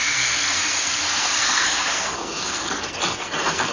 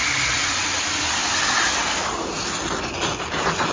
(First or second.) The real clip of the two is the second